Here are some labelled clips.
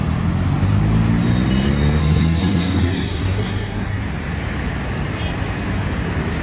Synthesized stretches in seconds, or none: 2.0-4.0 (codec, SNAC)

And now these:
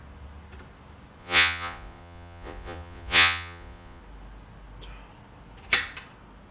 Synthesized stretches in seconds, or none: 1.2-4.0 (vocoder, Vocos)

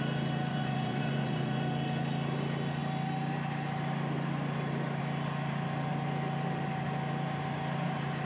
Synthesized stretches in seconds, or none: 0.5-1.6 (vocoder, Vocos)

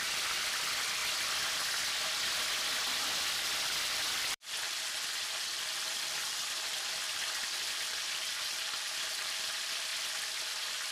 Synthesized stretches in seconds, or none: 0.0-1.0 (vocoder, BigVGAN v2); 3.3-10.9

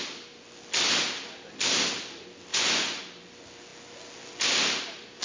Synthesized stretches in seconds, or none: 2.5-3.0 (vocoder, Vocos)

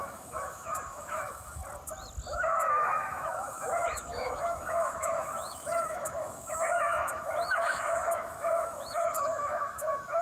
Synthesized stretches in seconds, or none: 0.0-1.6 (autoencoder, DAC-VAE); 2.3-10.2